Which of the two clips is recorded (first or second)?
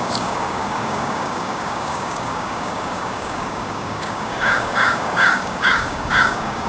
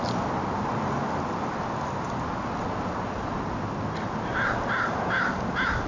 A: second